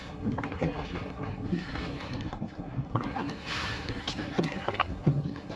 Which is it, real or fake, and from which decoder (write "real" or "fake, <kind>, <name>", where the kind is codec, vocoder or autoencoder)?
fake, codec, SNAC